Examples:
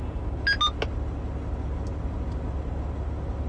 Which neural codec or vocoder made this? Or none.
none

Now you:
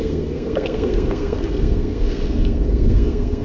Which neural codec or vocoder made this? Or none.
codec, SNAC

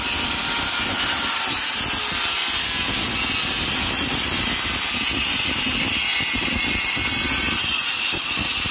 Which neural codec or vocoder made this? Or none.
none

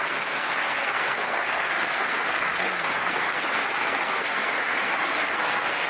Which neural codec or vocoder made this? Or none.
codec, SNAC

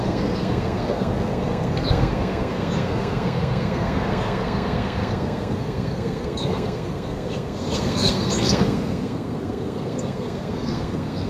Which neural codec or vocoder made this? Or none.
codec, SNAC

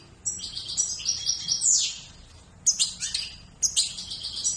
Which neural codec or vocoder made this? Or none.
none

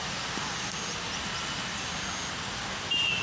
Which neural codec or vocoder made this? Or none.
none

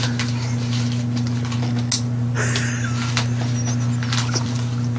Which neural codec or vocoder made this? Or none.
none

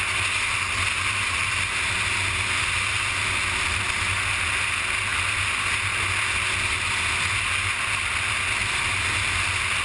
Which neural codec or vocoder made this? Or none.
none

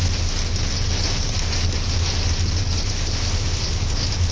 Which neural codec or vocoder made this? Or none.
none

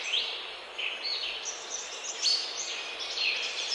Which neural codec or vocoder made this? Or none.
none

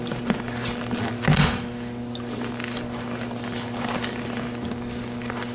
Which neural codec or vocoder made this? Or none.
none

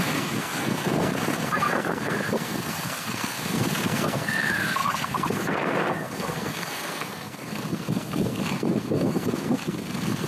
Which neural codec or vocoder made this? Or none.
codec, SNAC